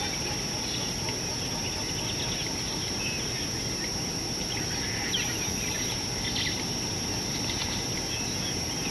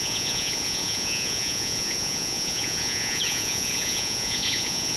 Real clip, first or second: first